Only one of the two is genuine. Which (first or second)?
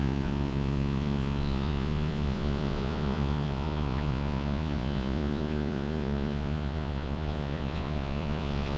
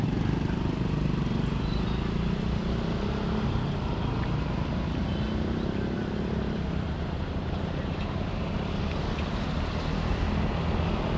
second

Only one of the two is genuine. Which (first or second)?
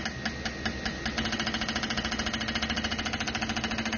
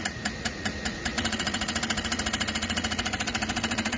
first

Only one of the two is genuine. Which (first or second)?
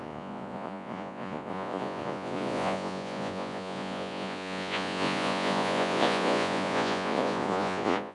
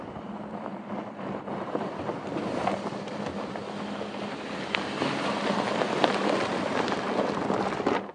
second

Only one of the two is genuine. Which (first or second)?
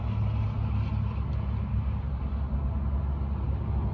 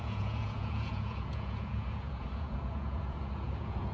first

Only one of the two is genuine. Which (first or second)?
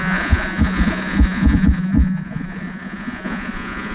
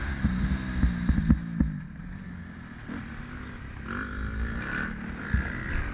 second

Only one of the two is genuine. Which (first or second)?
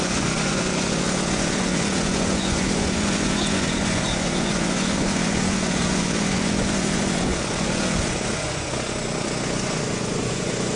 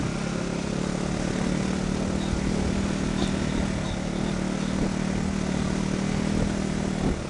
second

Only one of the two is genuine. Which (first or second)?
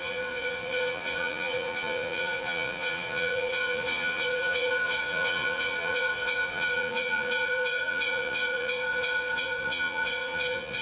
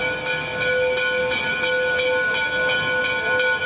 second